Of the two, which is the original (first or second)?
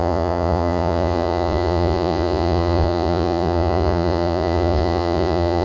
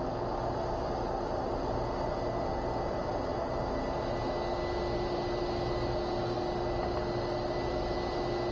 second